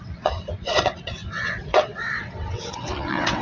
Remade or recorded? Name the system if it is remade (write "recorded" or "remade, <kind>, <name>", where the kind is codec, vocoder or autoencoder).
remade, vocoder, WaveNeXt